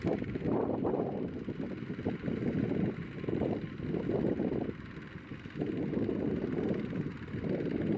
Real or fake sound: real